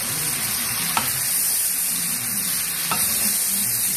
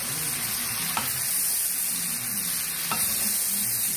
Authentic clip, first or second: second